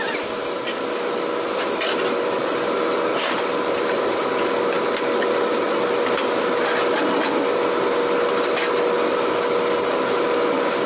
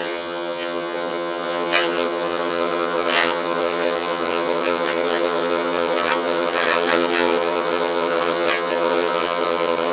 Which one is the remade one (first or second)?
second